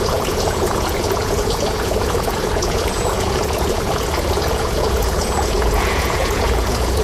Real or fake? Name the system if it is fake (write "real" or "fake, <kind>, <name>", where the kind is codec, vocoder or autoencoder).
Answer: fake, vocoder, Vocos